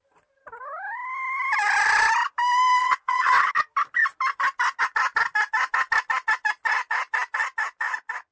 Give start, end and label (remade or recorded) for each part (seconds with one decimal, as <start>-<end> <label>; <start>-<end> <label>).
0.0-2.8 recorded; 2.8-3.5 remade; 3.5-8.3 recorded